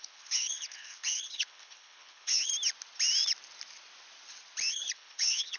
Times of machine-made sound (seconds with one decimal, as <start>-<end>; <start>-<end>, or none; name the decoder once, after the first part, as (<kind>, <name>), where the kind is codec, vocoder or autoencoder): 0.0-2.5 (codec, HILCodec); 4.7-5.6